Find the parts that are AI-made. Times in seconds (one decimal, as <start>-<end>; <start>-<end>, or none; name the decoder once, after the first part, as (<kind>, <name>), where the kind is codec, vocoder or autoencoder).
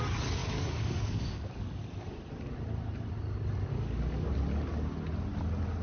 0.4-1.8 (codec, DAC); 3.7-4.3